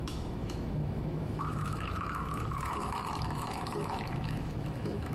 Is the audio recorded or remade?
remade